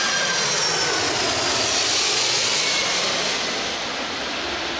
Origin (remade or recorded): recorded